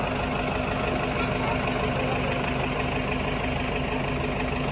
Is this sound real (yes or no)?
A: yes